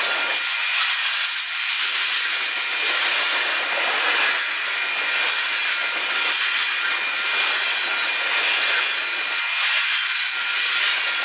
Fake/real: real